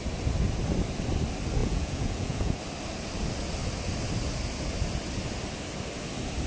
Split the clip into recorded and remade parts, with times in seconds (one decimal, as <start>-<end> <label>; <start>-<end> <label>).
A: 0.0-1.6 recorded; 1.6-2.6 remade; 2.6-6.5 recorded